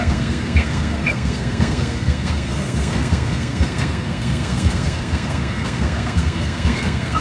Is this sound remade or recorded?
remade